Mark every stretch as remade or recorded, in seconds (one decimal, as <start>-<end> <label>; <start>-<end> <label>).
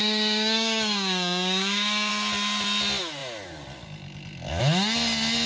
0.0-2.1 remade; 2.1-5.5 recorded